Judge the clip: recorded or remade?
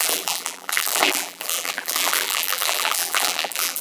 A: remade